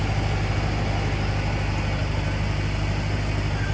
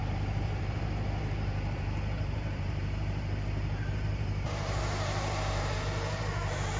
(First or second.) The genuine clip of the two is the first